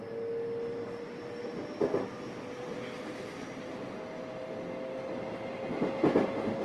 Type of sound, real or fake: real